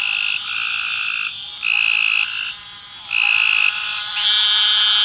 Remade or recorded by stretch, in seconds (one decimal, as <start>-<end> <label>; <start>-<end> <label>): 0.0-5.0 recorded